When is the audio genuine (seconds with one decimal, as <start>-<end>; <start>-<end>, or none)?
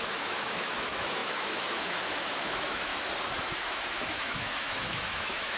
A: 2.9-3.4